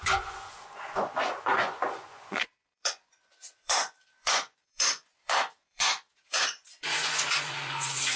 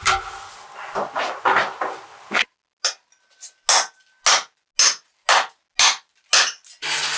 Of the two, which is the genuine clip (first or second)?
second